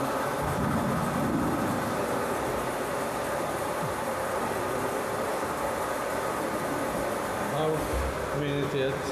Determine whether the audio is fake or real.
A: real